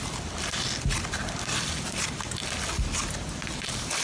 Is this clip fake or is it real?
real